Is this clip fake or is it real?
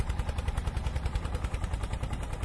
fake